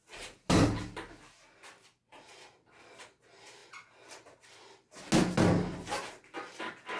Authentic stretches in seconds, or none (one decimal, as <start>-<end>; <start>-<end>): 0.0-7.0